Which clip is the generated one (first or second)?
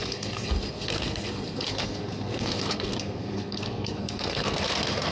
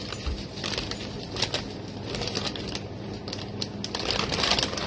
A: first